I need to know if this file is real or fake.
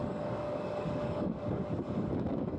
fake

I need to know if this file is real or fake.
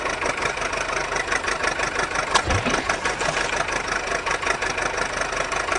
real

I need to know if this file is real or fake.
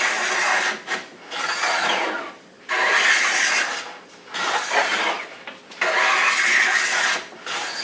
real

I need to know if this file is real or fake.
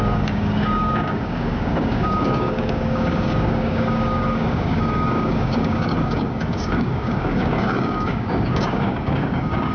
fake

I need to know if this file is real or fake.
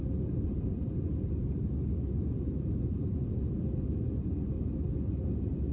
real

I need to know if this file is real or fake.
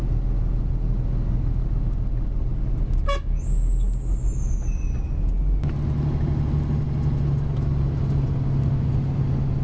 real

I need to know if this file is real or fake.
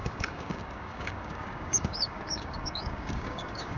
fake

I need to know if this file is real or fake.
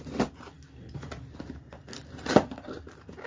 real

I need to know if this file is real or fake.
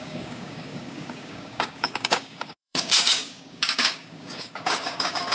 fake